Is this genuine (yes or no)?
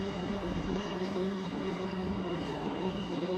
no